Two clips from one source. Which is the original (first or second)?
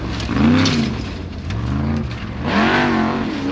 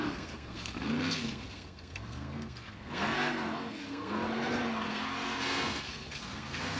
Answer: first